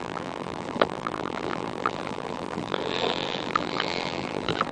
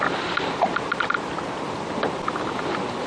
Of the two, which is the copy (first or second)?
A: first